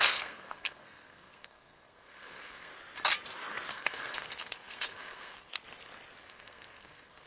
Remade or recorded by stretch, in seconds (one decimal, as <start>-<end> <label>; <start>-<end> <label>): 0.0-2.7 remade; 2.7-3.7 recorded; 3.7-5.5 remade; 5.5-6.2 recorded; 6.2-7.3 remade